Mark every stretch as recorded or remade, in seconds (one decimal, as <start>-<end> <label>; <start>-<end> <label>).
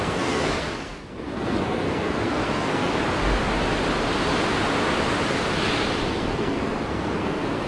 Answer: 0.0-2.9 remade; 2.9-6.1 recorded; 6.1-7.7 remade